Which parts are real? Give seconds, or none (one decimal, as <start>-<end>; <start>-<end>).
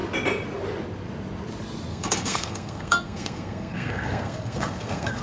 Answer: 0.0-1.9